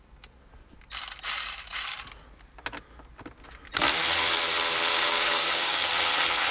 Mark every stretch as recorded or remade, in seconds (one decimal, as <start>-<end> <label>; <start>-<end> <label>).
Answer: 0.0-4.9 recorded; 4.9-5.9 remade; 5.9-6.5 recorded